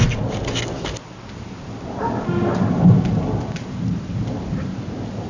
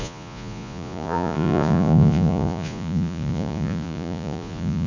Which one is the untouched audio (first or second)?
first